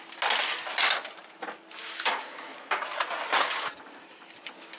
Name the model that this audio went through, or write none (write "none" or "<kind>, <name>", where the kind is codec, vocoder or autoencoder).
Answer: none